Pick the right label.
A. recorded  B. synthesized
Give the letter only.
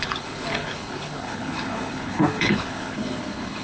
B